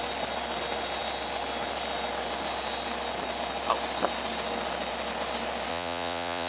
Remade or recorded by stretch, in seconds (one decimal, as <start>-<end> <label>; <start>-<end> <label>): 0.0-5.7 recorded; 5.7-6.5 remade